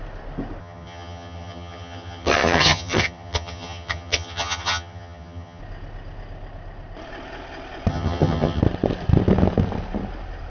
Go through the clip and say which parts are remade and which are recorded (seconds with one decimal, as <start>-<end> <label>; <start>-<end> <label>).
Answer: 0.0-0.6 recorded; 0.6-5.6 remade; 5.6-7.9 recorded; 7.9-8.6 remade; 8.6-10.5 recorded